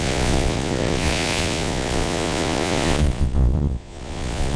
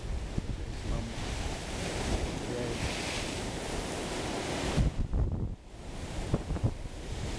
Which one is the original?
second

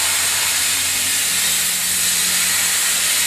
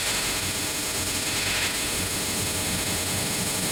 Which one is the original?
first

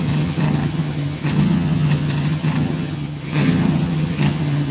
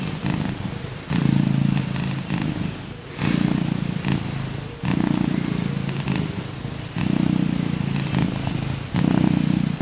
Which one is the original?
second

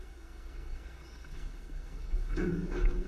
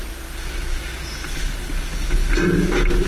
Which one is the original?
second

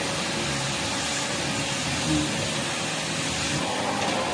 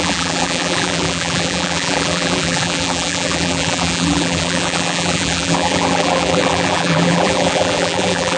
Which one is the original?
first